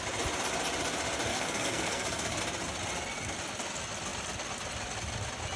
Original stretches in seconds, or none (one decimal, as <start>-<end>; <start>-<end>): 0.0-1.3; 2.4-5.6